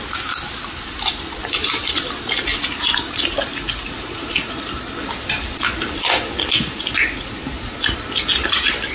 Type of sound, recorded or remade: recorded